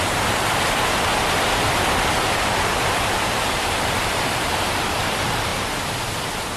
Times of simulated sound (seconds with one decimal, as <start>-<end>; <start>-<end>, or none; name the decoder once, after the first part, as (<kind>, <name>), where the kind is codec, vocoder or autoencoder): 0.0-1.1 (vocoder, BigVGAN v2); 2.3-2.7; 3.4-5.5; 6.1-6.6